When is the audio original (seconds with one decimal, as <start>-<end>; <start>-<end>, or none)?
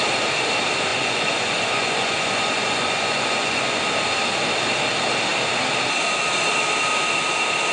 0.0-0.9; 3.8-7.7